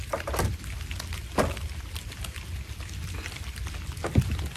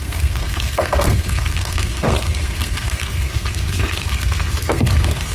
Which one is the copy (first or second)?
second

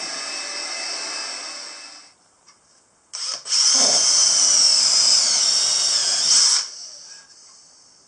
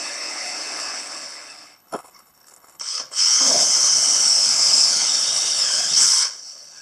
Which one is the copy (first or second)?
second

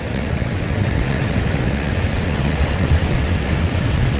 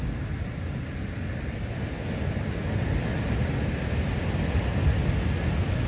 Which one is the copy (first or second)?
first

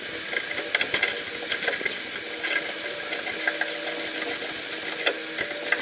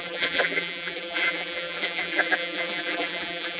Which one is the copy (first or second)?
second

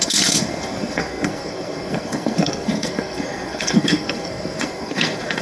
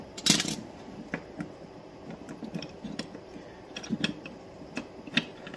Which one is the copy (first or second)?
first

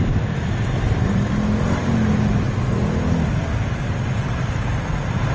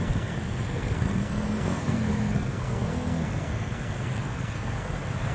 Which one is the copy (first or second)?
second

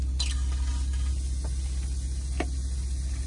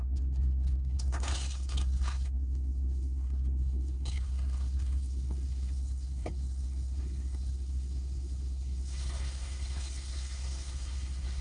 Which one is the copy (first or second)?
second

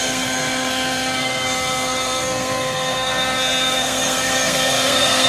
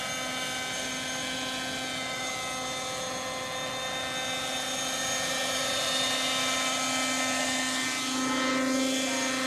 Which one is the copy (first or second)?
first